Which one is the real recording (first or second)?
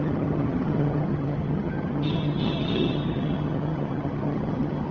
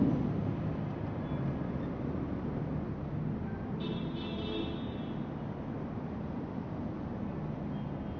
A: second